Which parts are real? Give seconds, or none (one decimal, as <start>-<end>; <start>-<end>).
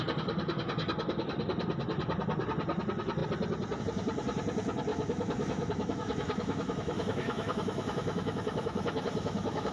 0.0-4.9